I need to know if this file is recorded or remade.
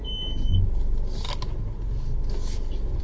recorded